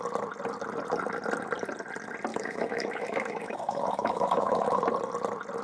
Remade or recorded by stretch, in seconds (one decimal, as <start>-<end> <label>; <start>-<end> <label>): 0.0-2.3 recorded; 2.3-4.8 remade; 4.8-5.6 recorded